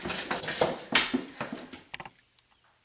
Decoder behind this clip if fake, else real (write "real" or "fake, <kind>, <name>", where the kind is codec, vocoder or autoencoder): real